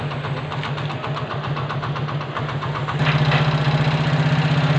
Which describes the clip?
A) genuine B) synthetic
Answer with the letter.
A